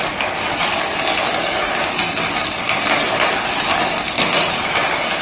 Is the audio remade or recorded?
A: recorded